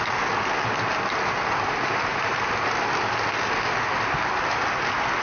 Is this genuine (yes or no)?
yes